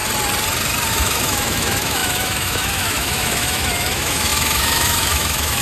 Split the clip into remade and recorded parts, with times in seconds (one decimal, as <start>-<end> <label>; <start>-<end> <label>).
0.0-0.9 recorded; 0.9-5.6 remade